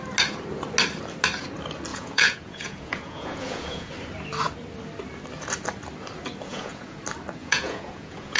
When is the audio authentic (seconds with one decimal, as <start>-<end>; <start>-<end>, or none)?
0.0-1.9; 3.9-6.5; 7.0-7.4